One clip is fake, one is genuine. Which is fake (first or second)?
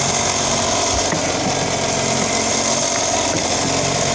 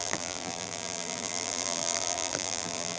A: second